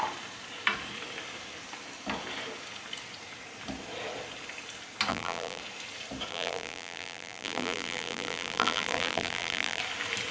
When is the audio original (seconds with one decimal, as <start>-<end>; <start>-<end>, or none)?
0.0-5.1; 5.6-6.3; 9.8-10.3